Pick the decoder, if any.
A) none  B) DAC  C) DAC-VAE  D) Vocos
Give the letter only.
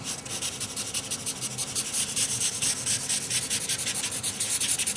A